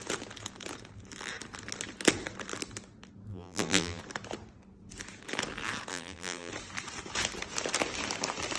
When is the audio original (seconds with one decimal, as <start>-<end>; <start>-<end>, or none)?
0.0-3.3; 4.0-5.9; 6.5-8.6